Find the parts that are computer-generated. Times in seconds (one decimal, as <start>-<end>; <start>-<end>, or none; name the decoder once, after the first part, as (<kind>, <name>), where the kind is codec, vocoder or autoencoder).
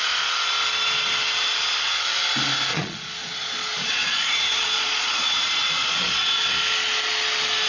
2.7-6.6 (vocoder, Vocos)